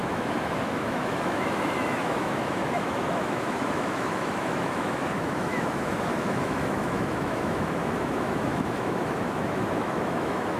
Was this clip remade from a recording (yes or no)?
yes